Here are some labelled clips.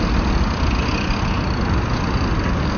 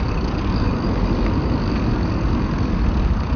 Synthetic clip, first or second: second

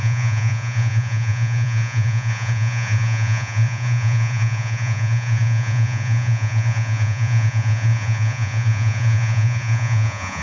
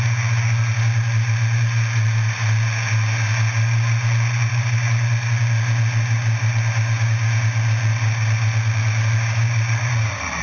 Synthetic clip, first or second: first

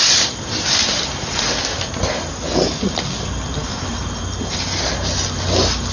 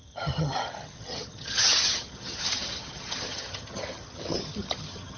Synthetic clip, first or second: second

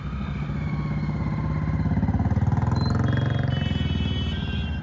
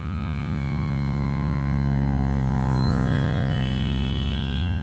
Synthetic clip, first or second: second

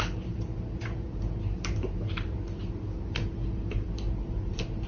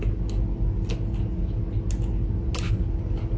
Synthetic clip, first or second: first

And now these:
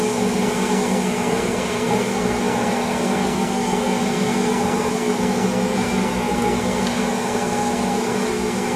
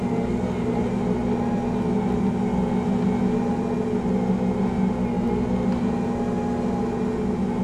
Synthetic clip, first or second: first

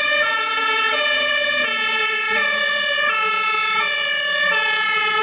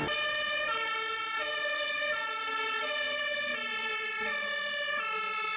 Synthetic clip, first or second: first